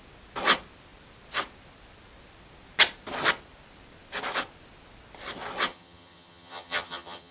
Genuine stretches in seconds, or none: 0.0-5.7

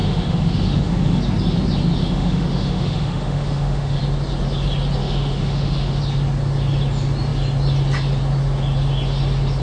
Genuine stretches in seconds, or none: 1.2-2.0; 4.0-5.0; 6.0-9.6

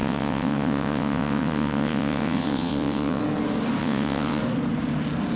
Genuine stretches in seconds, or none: 3.2-3.8; 4.4-5.4

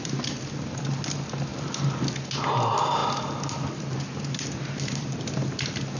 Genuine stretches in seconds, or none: 0.0-6.0

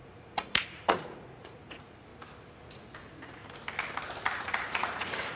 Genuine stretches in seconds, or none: 2.1-2.6; 3.4-4.4